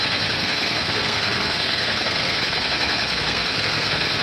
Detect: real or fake fake